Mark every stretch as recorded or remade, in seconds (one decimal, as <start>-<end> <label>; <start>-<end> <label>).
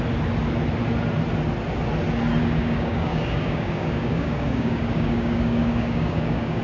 0.0-2.4 recorded; 2.4-6.6 remade